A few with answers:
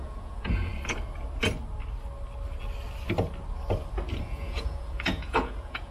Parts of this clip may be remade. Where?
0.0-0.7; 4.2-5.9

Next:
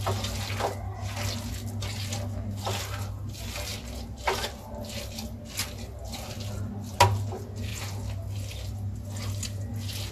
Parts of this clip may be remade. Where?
none